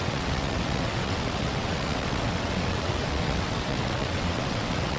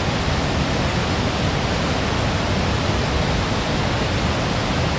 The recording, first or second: second